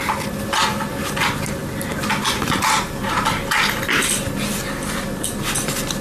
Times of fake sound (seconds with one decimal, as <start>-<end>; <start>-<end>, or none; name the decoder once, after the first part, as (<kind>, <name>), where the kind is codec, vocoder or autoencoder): none